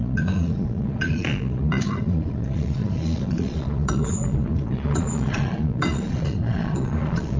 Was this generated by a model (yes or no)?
yes